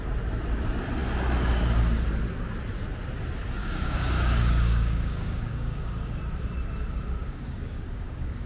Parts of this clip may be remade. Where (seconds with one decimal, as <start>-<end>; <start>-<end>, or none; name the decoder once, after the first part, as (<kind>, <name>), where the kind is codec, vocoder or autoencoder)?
3.6-6.2 (codec, DAC); 7.2-8.5